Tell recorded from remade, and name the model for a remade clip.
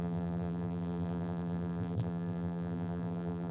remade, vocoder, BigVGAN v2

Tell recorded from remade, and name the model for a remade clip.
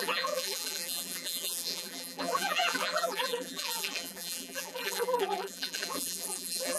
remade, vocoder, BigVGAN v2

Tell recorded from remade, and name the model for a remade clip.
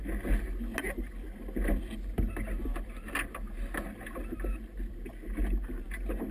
recorded